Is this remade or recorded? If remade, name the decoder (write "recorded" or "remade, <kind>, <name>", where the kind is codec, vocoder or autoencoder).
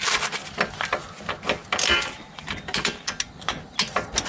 recorded